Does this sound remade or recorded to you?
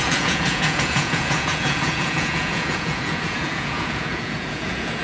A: remade